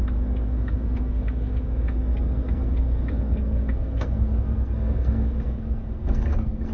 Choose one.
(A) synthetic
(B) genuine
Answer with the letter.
A